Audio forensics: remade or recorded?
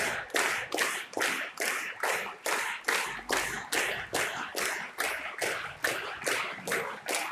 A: recorded